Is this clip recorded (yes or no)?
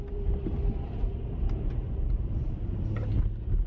no